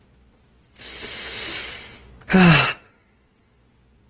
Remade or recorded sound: recorded